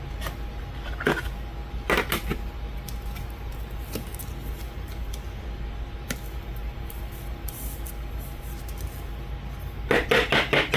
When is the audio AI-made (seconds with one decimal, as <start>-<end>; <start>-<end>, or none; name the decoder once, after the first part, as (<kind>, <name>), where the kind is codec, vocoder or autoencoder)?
none